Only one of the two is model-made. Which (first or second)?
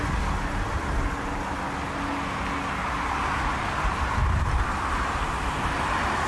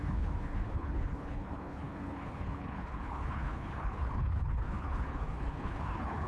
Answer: second